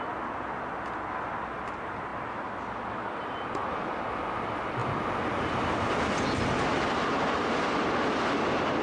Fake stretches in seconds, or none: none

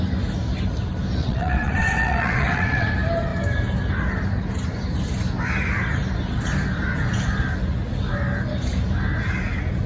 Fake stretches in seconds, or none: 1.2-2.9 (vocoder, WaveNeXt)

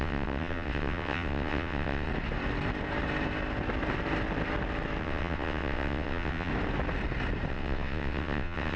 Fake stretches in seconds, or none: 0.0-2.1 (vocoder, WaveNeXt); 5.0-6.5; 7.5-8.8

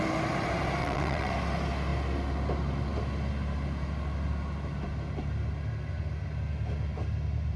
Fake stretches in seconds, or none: 0.8-1.3 (vocoder, WaveNeXt)

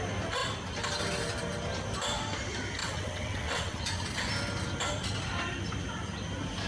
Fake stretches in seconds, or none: 2.8-3.8 (vocoder, WaveNeXt)

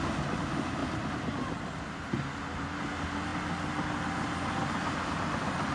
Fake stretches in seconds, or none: none

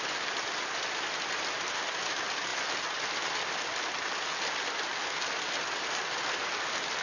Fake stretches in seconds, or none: none

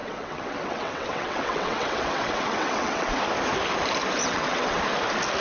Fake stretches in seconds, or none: 0.0-3.2 (vocoder, WaveNeXt); 4.2-4.8